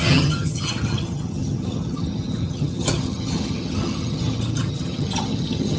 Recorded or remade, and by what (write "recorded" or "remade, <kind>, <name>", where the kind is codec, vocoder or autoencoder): remade, vocoder, HiFi-GAN